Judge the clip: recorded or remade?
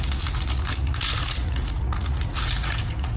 remade